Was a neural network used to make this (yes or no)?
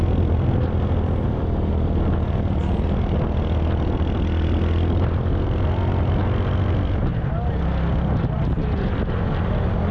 no